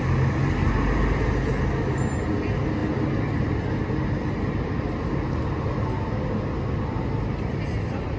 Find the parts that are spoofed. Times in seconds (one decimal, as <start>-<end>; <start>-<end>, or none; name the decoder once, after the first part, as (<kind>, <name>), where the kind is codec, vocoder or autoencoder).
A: none